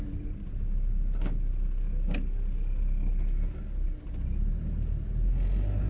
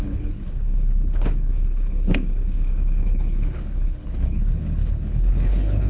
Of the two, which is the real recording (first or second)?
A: first